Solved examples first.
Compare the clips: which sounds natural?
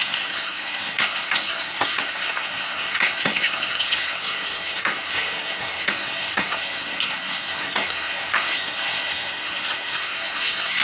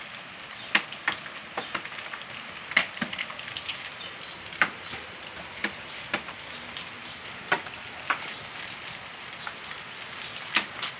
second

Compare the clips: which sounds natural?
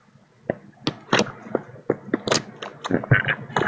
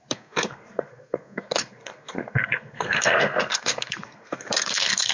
first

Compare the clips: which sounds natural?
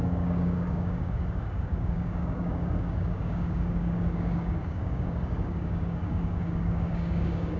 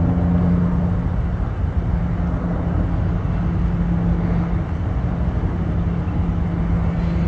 second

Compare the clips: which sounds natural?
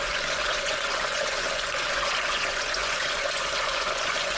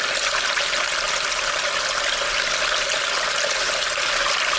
second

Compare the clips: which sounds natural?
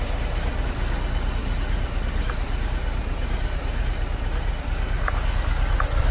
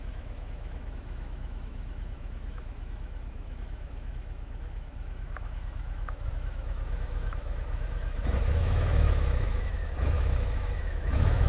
first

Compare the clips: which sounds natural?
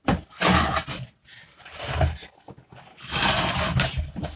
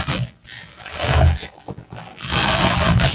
first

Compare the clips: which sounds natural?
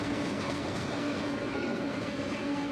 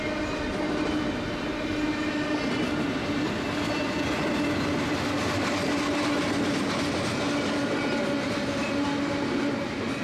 second